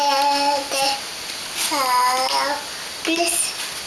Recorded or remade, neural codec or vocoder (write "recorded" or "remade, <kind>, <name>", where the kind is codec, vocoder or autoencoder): recorded